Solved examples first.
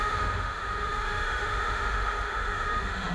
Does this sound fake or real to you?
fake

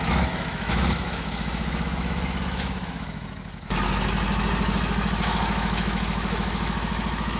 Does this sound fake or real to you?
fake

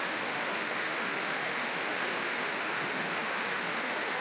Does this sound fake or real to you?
fake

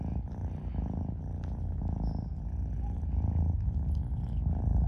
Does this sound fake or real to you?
real